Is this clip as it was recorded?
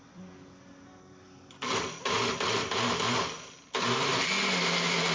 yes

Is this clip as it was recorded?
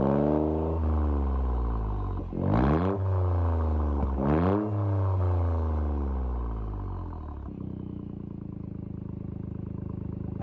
yes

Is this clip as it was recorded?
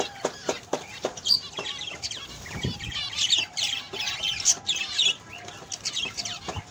no